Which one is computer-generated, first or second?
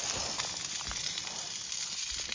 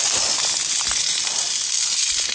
first